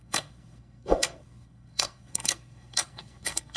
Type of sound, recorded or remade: remade